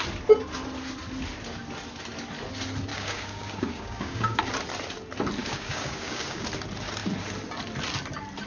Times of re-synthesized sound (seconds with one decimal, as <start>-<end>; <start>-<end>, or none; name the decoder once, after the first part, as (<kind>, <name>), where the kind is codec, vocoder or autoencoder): 2.9-4.4 (codec, DAC); 5.4-6.4